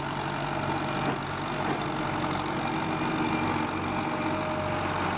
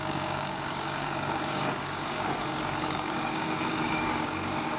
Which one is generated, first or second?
second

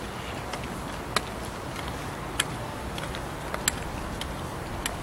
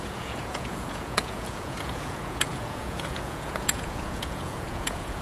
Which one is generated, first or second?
second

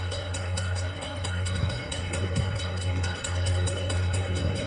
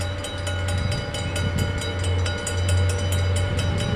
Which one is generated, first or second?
first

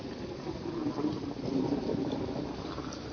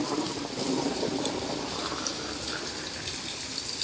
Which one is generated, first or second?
second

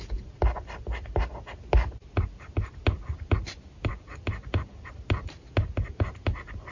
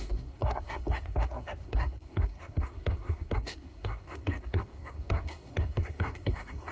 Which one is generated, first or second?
second